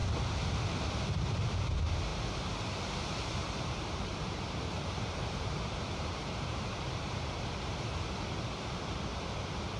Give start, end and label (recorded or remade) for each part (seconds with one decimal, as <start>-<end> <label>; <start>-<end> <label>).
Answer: 0.0-3.4 recorded; 3.4-7.9 remade; 7.9-9.8 recorded